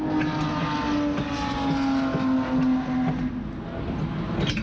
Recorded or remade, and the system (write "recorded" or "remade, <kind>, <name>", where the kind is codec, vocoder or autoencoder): recorded